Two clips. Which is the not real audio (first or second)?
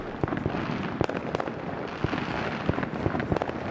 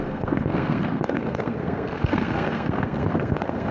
second